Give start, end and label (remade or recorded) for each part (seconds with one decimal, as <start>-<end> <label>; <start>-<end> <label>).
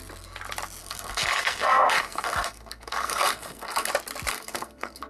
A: 0.0-0.8 recorded; 0.8-3.9 remade; 3.9-4.3 recorded; 4.3-5.1 remade